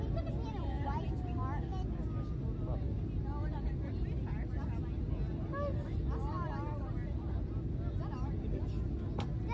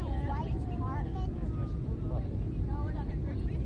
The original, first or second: first